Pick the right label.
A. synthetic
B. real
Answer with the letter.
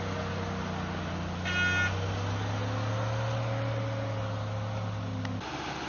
B